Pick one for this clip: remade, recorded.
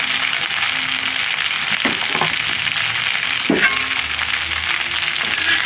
recorded